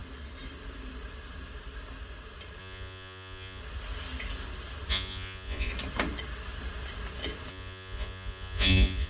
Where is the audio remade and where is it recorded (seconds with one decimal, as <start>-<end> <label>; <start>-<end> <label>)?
0.0-2.6 recorded; 2.6-3.6 remade; 3.6-4.9 recorded; 4.9-5.7 remade; 5.7-7.5 recorded; 7.5-9.1 remade